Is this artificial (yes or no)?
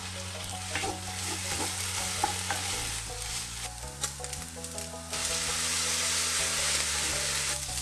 no